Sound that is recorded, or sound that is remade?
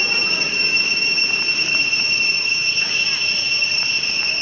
remade